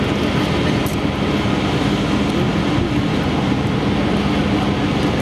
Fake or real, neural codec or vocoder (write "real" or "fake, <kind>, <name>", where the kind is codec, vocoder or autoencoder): real